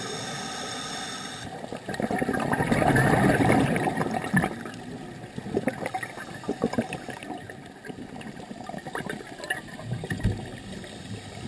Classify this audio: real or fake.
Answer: real